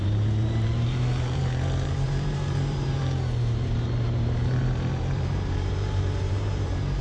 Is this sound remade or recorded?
remade